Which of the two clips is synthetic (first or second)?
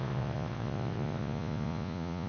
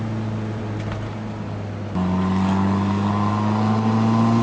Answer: first